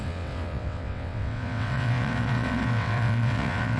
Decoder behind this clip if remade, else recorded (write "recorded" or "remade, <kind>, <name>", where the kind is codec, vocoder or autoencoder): remade, vocoder, WaveNeXt